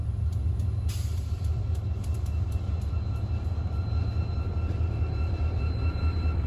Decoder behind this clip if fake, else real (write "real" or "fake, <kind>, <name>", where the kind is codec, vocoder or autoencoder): real